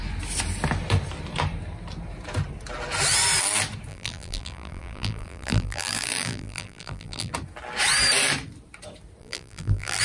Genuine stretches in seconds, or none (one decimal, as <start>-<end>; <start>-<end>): 0.0-3.9; 7.3-9.2